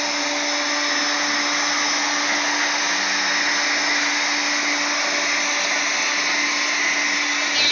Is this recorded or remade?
recorded